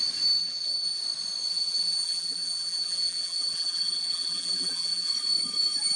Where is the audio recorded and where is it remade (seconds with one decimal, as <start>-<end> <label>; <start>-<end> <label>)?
0.0-0.4 recorded; 0.4-1.0 remade; 1.0-1.5 recorded; 1.5-5.1 remade; 5.1-6.0 recorded